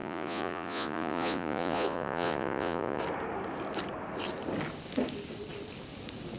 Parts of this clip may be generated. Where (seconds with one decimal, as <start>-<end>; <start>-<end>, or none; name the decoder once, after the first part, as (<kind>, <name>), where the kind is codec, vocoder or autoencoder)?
0.0-3.0 (vocoder, Vocos)